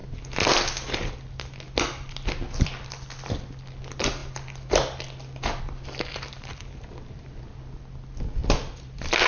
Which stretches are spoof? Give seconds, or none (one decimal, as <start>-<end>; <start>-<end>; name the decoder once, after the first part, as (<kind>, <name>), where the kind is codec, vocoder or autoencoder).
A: 6.1-6.6 (vocoder, BigVGAN v2)

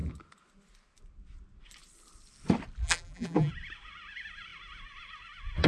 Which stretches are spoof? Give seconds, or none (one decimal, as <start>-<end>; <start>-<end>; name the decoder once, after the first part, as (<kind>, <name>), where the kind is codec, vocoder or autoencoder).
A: 2.8-3.5 (vocoder, BigVGAN v2)